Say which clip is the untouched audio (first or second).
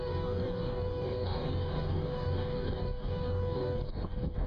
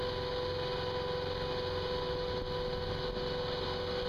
second